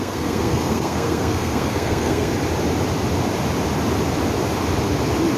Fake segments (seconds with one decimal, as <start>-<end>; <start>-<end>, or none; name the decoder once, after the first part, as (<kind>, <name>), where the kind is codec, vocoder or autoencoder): 0.0-2.3 (codec, SNAC)